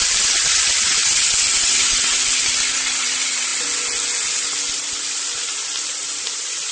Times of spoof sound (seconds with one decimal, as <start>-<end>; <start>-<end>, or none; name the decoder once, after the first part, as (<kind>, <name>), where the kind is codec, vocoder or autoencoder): 0.0-1.0 (vocoder, BigVGAN v2); 2.4-3.5; 5.0-6.7